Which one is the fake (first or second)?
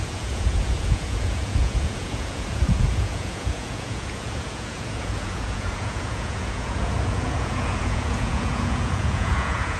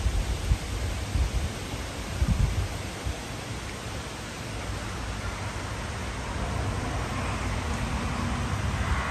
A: first